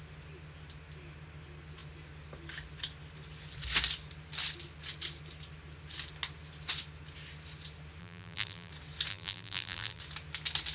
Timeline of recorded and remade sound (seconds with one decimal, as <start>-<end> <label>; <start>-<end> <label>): 0.0-8.0 recorded; 8.0-8.7 remade; 8.7-9.1 recorded; 9.1-10.0 remade; 10.0-10.7 recorded